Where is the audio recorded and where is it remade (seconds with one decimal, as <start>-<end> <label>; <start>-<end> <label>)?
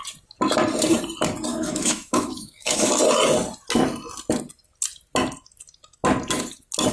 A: 0.0-1.5 recorded; 1.5-2.9 remade; 2.9-6.9 recorded